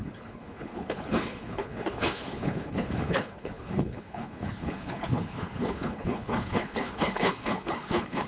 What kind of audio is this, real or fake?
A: fake